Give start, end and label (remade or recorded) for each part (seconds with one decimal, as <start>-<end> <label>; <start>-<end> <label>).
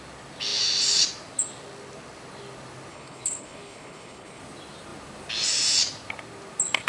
0.0-2.9 recorded; 2.9-4.4 remade; 4.4-6.9 recorded